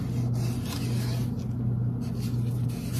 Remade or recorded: recorded